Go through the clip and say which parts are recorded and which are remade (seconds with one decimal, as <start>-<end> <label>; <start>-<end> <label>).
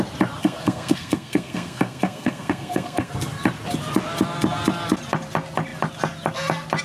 0.0-0.4 recorded; 0.4-3.1 remade; 3.1-6.8 recorded